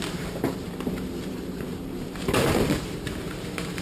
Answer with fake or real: fake